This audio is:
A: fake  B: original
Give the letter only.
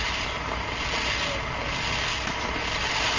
B